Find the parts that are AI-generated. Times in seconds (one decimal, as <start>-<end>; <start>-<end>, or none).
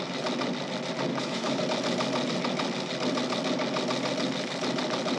1.1-1.6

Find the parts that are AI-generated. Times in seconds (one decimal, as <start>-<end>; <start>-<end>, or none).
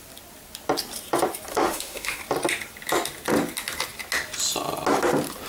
1.5-2.2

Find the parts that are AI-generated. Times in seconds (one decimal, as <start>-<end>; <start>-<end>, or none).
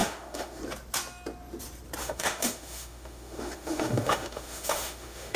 0.0-0.6; 2.0-5.4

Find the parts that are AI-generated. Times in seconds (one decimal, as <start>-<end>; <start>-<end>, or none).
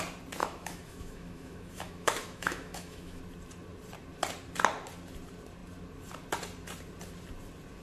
0.4-3.2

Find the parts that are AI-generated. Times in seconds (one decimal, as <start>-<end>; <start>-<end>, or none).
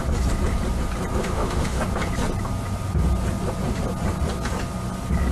1.2-1.8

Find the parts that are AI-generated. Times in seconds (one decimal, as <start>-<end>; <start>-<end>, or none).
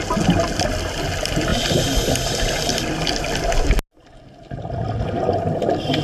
none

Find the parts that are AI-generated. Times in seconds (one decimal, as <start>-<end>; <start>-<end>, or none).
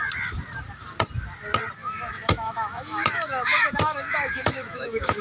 1.8-5.2